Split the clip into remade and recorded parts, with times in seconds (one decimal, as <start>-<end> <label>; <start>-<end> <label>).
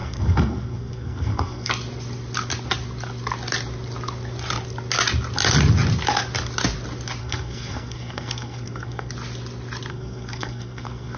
0.0-1.7 remade; 1.7-7.2 recorded; 7.2-9.1 remade; 9.1-9.9 recorded; 9.9-11.2 remade